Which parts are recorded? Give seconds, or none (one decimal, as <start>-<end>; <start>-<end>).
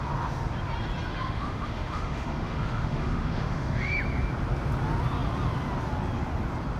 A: 0.0-1.1; 4.0-6.8